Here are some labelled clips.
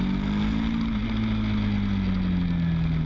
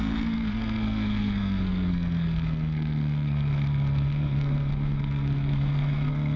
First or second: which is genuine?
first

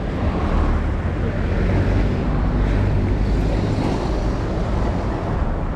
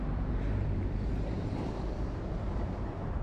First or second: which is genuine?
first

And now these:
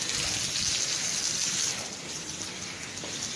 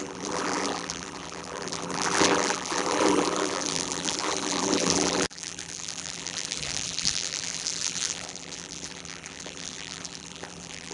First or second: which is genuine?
first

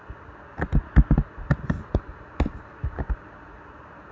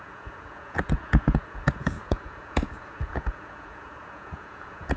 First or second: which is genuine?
first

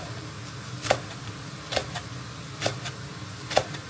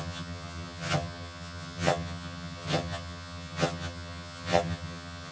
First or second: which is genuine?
first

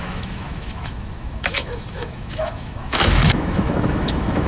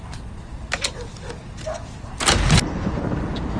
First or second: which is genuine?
second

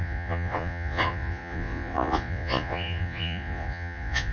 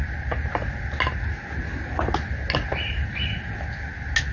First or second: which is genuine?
second